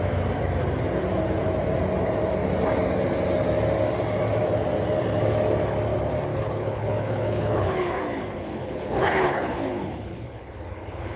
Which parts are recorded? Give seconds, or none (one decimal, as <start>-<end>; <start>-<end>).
0.0-6.3